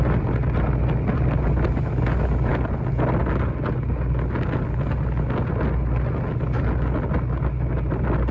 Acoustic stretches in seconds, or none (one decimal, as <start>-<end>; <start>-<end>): 0.0-8.3